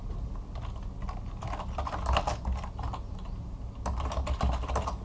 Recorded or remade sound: recorded